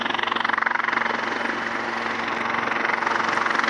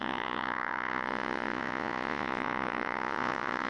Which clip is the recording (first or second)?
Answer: first